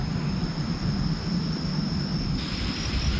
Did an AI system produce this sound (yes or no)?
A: no